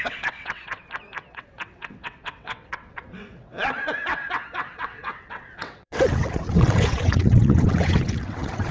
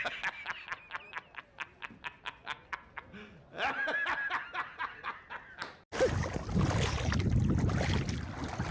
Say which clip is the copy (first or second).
first